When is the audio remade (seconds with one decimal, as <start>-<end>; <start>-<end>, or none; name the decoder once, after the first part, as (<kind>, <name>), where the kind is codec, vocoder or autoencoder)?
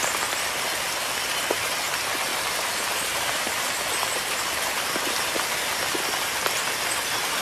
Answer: 2.3-3.4 (vocoder, BigVGAN v2)